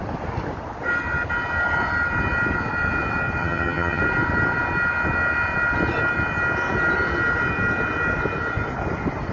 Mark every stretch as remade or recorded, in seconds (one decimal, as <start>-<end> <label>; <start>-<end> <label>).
0.0-3.4 recorded; 3.4-4.0 remade; 4.0-9.3 recorded